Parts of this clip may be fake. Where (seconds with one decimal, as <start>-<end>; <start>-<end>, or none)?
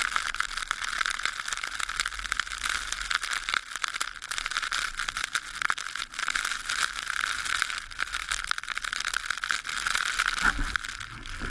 none